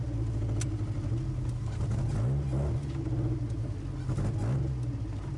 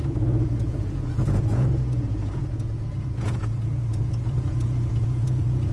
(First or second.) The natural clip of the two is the first